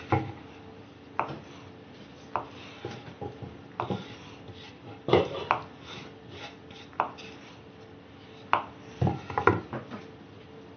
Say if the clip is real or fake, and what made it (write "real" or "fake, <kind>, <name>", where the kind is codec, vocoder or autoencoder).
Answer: real